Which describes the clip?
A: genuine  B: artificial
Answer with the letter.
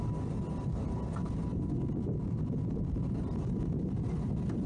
A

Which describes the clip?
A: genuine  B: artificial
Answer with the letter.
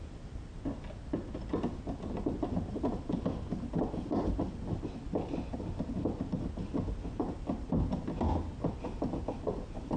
A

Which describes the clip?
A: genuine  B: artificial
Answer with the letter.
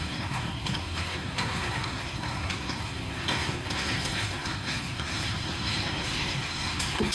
B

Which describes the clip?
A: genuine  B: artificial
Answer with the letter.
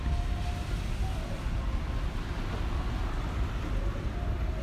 A